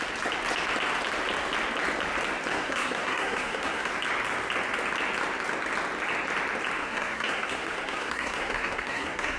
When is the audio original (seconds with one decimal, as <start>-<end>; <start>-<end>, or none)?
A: 0.0-2.5; 3.9-6.8